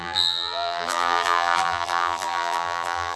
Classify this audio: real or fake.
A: fake